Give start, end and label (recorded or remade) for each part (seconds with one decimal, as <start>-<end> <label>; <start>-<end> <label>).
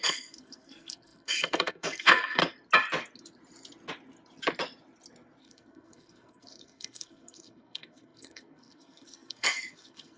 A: 0.0-2.4 remade; 2.4-5.4 recorded; 5.4-10.2 remade